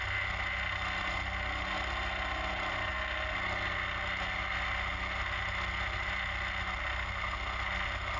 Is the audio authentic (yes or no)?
yes